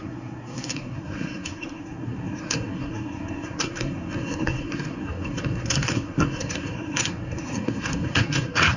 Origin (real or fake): fake